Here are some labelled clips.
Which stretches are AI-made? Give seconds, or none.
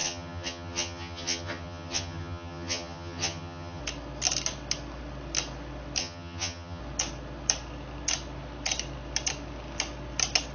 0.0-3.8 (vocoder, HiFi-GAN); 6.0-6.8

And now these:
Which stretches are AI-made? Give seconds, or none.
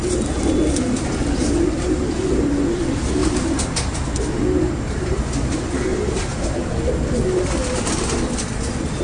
none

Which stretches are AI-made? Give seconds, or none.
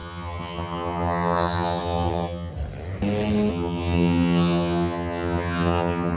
0.0-2.5 (vocoder, HiFi-GAN); 3.5-6.2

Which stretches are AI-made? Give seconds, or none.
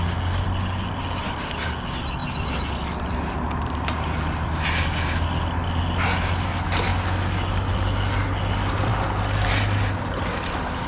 none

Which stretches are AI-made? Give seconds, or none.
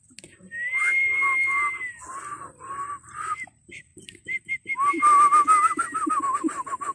none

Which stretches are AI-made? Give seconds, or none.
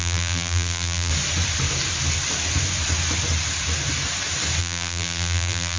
0.0-1.1 (vocoder, BigVGAN v2); 4.6-5.8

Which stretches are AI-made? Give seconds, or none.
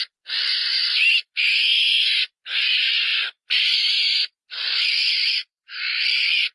4.5-6.5 (vocoder, BigVGAN v2)